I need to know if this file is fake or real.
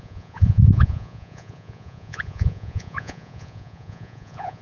fake